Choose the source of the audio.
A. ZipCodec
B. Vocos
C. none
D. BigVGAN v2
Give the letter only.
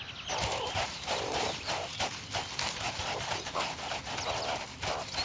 C